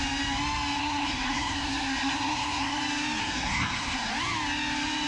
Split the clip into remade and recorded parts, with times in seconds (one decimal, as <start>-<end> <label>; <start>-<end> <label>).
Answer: 0.0-0.8 recorded; 0.8-2.8 remade; 2.8-3.2 recorded; 3.2-4.1 remade; 4.1-5.1 recorded